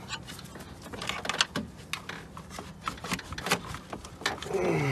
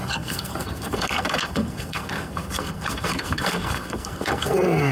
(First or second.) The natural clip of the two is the first